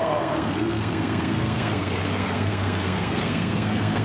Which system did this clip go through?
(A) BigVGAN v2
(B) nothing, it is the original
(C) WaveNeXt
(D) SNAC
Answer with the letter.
D